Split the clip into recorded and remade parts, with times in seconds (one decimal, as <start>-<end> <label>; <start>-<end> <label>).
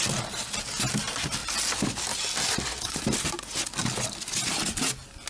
0.0-5.3 recorded